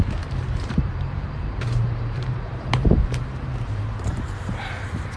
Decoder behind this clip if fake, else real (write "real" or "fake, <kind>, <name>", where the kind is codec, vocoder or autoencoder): fake, vocoder, BigVGAN v2